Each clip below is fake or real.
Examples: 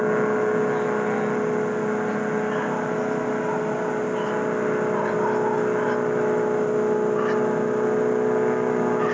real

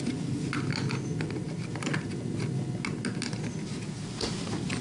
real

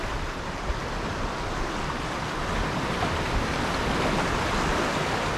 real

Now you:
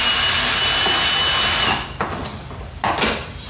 real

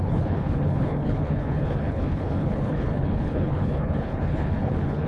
fake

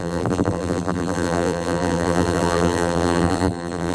fake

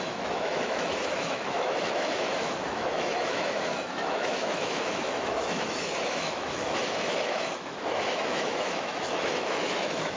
fake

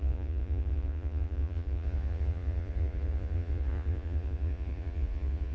fake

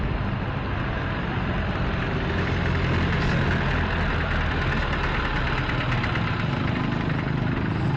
real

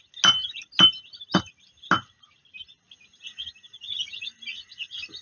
real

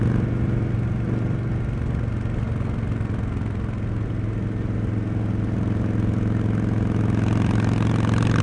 real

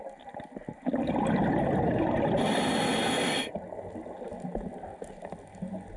real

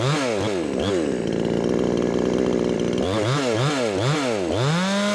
real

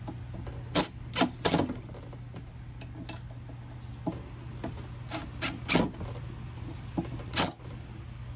real